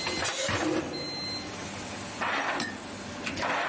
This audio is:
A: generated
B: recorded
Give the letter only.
B